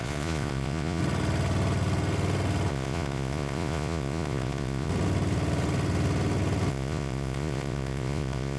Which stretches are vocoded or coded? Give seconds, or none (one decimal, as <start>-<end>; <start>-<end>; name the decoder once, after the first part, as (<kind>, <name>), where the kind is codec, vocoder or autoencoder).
0.0-1.0 (vocoder, Vocos); 2.7-4.9; 6.7-8.6